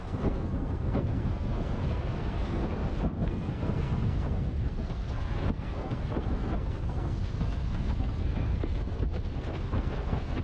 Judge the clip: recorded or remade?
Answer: remade